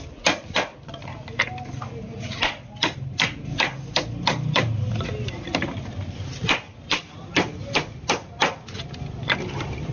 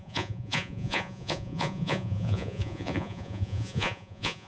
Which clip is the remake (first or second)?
second